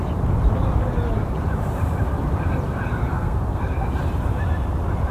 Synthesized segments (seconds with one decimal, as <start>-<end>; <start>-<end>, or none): 3.1-3.6